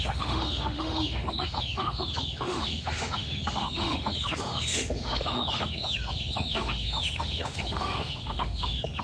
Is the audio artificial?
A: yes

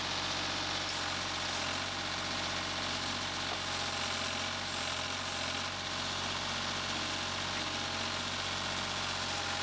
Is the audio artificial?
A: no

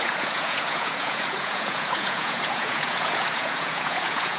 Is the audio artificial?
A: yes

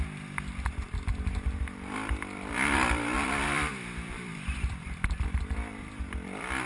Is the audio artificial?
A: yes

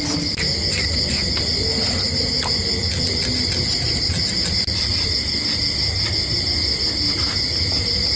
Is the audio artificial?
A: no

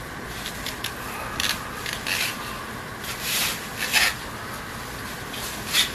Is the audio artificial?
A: no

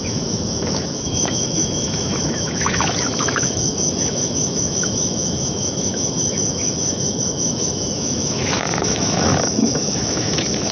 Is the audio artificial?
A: yes